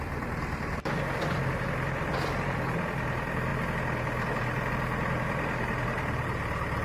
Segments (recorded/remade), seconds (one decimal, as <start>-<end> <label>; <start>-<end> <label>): 0.0-3.5 remade; 3.5-4.7 recorded; 4.7-6.8 remade